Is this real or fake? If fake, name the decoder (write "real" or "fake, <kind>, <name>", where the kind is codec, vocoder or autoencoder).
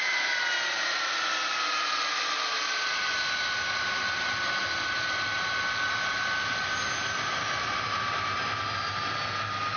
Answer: real